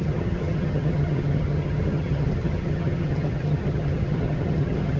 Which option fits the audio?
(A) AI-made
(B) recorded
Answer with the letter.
A